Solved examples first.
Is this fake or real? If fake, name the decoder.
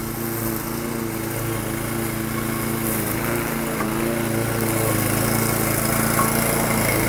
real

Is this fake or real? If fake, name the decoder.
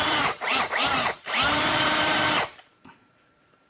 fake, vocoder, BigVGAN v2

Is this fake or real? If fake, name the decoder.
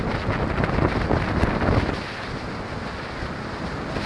real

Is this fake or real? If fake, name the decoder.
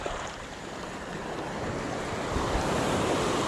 real